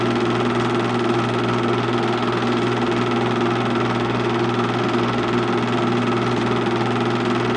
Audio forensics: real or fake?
real